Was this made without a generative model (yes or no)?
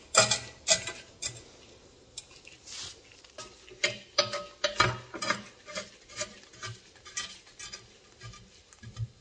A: yes